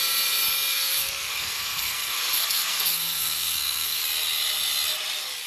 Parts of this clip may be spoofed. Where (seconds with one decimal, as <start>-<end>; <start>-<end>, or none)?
0.7-4.0